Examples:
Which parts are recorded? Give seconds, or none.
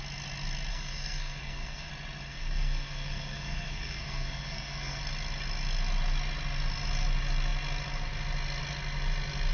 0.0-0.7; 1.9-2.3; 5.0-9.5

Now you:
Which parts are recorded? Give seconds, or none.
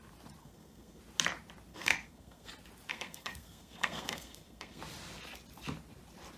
0.0-0.4; 1.0-1.7; 2.5-2.9; 4.8-6.4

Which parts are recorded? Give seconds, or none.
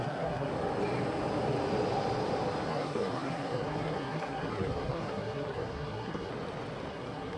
0.5-2.7; 6.3-6.9